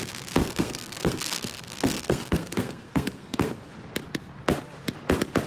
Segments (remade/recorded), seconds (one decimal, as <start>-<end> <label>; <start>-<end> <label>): 0.0-0.4 recorded; 0.4-3.7 remade; 3.7-5.5 recorded